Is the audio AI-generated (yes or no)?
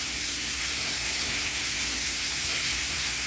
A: yes